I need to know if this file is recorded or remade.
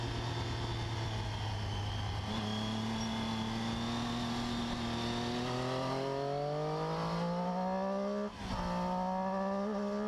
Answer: recorded